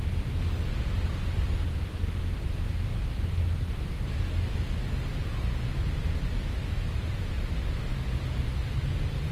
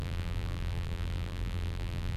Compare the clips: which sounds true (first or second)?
first